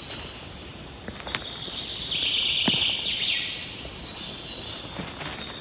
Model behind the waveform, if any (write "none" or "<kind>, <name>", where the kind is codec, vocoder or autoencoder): none